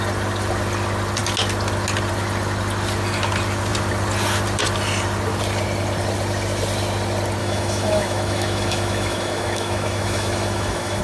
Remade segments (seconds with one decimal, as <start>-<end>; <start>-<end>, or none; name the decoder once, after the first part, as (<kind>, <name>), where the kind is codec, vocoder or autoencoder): 7.4-11.0 (autoencoder, DAC-VAE)